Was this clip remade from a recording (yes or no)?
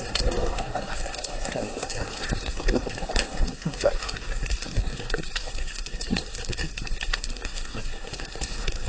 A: yes